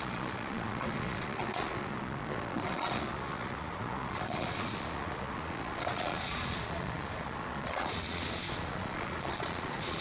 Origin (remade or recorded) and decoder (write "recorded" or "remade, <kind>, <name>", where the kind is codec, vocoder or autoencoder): remade, vocoder, Vocos